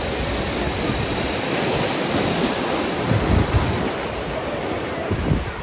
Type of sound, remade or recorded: recorded